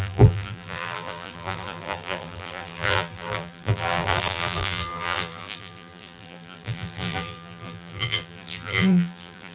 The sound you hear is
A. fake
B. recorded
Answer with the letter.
A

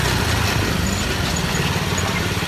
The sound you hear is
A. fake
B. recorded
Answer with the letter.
B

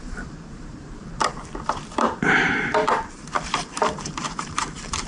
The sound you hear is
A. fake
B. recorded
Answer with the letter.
A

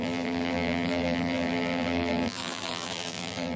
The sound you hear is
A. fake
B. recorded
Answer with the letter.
A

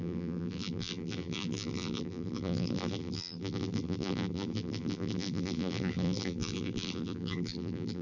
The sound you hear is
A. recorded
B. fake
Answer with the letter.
B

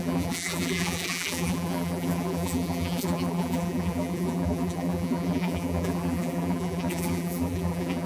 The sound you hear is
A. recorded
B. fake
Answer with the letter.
B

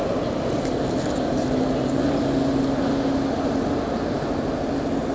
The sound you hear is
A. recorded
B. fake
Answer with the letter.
A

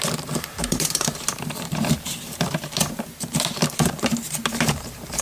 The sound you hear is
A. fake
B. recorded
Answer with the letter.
A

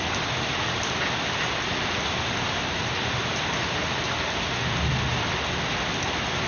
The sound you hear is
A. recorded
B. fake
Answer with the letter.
A